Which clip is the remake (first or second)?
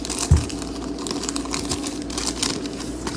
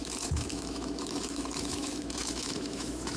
second